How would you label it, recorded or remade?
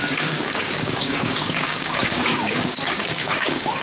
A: remade